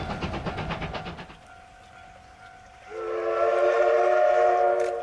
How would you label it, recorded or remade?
recorded